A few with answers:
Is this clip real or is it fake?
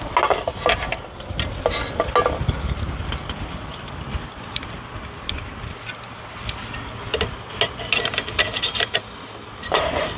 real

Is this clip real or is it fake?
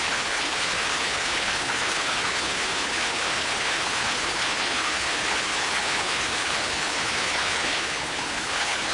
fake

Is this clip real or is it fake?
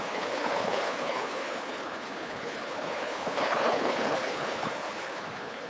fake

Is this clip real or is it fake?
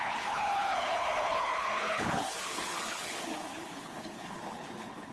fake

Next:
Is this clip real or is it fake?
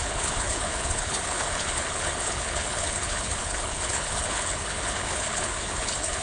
fake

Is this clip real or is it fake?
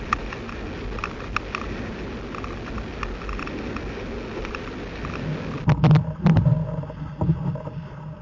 real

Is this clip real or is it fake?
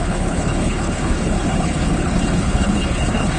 fake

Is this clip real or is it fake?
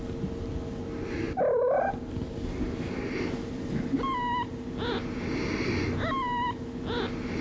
real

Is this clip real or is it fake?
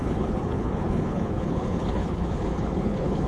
fake